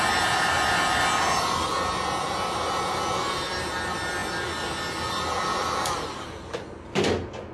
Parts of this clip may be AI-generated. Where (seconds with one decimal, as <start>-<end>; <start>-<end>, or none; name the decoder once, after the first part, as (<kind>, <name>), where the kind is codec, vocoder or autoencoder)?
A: none